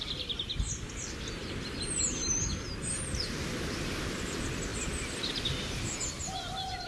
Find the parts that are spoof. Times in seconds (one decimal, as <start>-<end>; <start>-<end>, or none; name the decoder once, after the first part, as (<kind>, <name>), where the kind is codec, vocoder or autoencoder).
none